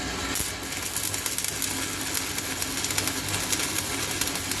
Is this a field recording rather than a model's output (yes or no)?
yes